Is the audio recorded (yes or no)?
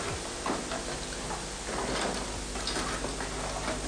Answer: yes